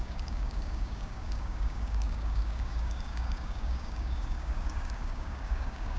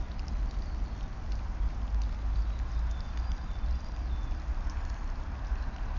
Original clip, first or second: second